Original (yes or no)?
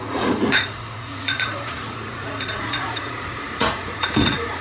no